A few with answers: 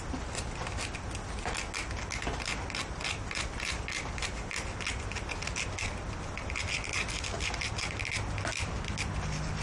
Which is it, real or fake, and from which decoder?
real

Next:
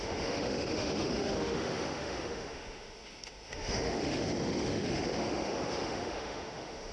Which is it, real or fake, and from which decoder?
fake, autoencoder, DAC-VAE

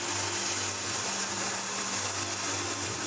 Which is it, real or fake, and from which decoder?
real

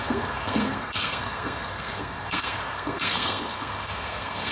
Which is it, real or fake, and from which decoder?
fake, codec, SNAC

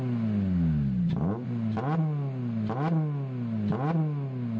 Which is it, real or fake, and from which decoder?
real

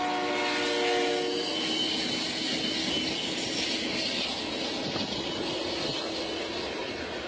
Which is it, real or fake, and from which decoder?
real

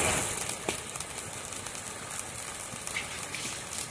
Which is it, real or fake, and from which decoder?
real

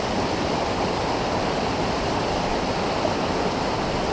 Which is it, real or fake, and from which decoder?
real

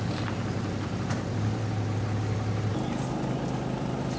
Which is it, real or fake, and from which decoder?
real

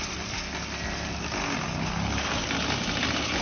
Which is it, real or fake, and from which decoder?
real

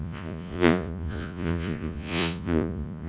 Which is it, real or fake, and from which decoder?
fake, vocoder, Vocos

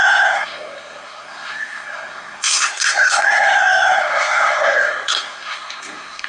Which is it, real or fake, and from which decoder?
fake, codec, SNAC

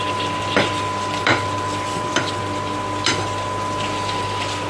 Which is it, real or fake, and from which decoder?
fake, vocoder, BigVGAN v2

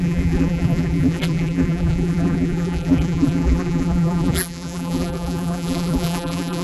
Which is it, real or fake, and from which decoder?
fake, vocoder, BigVGAN v2